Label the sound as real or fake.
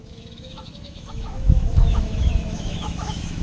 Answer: fake